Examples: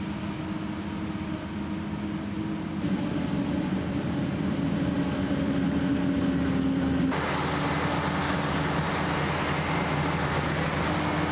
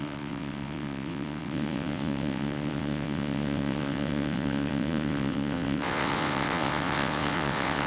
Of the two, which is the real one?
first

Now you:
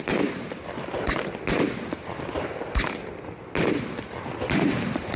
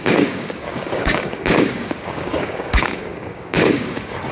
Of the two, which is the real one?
first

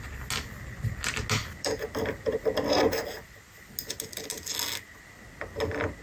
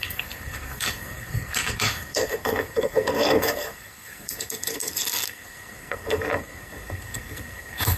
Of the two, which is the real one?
first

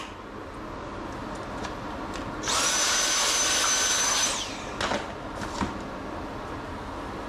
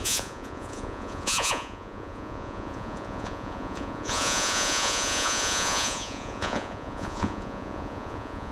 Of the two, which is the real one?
first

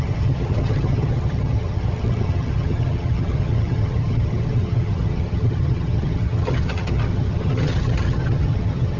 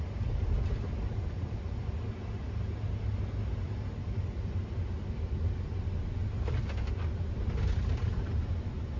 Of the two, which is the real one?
second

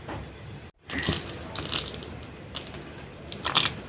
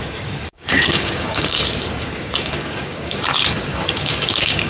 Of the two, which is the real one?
first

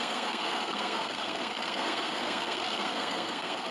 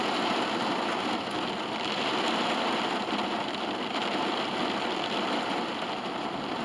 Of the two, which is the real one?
second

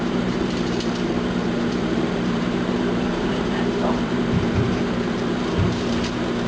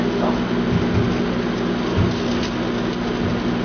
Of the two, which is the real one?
second